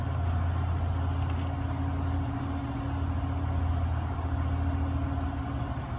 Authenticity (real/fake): real